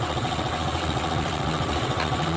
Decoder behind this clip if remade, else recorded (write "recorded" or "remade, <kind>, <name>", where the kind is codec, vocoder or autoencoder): remade, vocoder, WaveNeXt